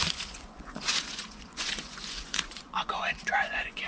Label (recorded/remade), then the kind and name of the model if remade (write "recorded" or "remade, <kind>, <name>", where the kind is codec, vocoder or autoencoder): remade, vocoder, Vocos